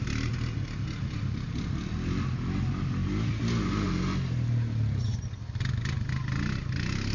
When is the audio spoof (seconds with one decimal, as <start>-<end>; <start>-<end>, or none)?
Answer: none